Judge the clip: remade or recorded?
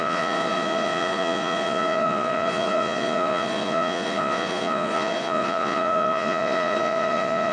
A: remade